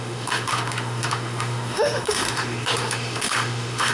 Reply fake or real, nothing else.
fake